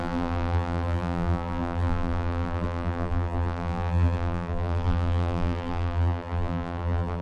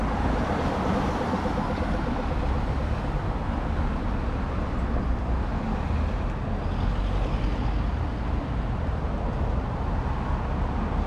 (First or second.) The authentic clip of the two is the second